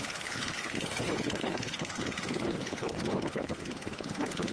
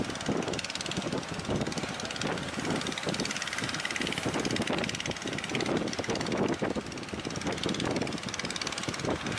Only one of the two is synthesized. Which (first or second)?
first